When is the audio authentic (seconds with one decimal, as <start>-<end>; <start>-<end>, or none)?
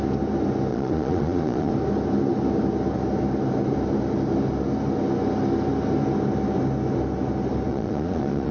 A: 0.0-0.7; 1.7-7.7